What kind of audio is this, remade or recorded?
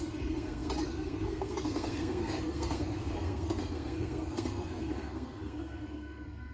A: remade